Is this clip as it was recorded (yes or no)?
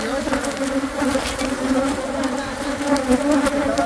yes